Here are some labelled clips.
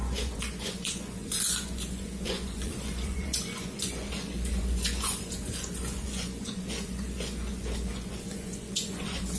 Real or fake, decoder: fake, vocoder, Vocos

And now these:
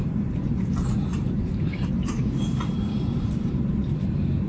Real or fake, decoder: fake, vocoder, BigVGAN v2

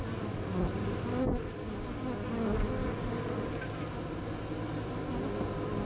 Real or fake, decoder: real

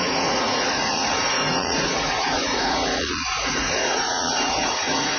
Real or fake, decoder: fake, vocoder, Vocos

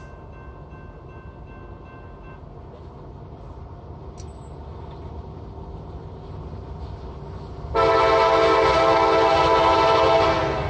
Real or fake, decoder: real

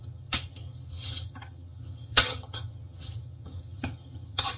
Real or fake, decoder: fake, vocoder, HiFi-GAN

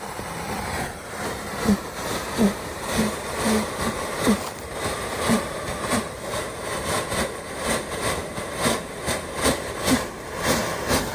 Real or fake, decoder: fake, vocoder, BigVGAN v2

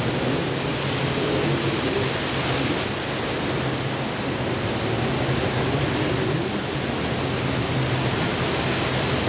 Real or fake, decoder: real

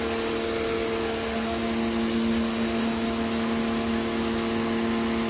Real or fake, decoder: real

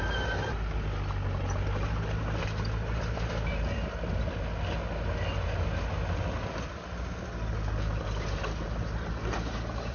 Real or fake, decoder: real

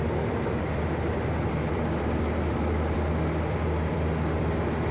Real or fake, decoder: fake, vocoder, BigVGAN v2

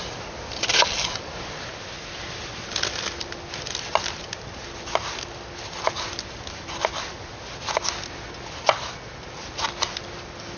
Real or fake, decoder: real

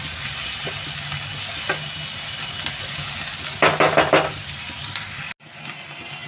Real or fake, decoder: real